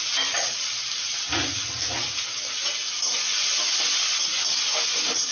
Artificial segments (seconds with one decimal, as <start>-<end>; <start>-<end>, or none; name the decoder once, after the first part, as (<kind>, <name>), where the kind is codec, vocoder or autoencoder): none